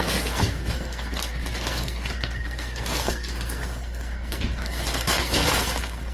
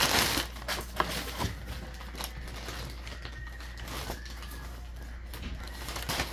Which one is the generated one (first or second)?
first